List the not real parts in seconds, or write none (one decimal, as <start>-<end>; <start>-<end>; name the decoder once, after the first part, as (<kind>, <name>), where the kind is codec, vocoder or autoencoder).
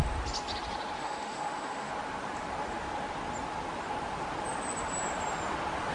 1.0-1.9 (autoencoder, DAC-VAE)